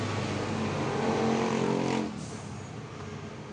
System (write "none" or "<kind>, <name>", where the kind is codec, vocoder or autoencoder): none